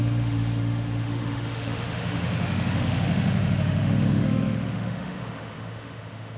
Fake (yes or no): yes